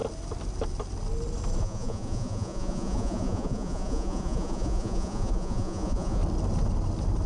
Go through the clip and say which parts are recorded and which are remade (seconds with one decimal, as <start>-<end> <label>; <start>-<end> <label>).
0.0-1.6 recorded; 1.6-6.2 remade; 6.2-7.3 recorded